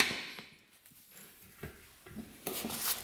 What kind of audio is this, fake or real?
real